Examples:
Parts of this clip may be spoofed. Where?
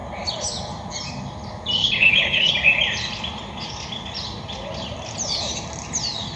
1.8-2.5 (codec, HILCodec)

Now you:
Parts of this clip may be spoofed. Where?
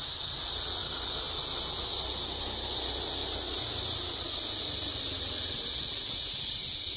none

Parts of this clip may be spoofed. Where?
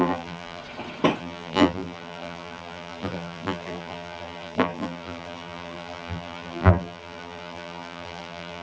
0.0-0.6 (vocoder, BigVGAN v2); 1.2-8.6